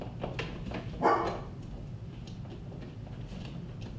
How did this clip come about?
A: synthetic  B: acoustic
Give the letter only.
B